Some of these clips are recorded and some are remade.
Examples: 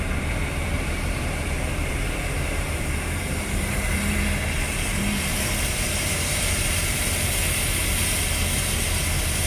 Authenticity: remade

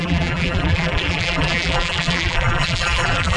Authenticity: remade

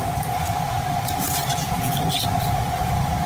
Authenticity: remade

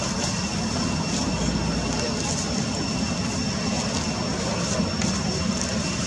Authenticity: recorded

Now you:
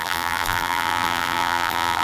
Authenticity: remade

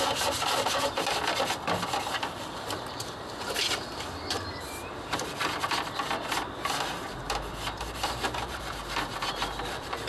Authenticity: remade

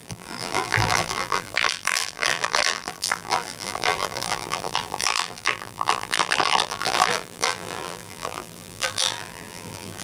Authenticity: remade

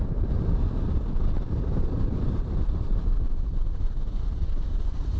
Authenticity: remade